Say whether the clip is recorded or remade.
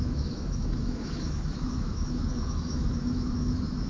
remade